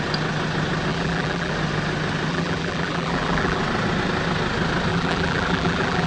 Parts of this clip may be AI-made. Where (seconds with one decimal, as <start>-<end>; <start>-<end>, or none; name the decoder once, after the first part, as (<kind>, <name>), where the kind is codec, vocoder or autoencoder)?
0.9-1.5 (vocoder, BigVGAN v2); 2.3-3.6; 4.9-6.1